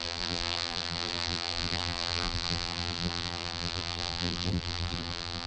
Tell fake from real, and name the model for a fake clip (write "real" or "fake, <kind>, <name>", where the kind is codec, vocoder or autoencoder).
fake, vocoder, BigVGAN v2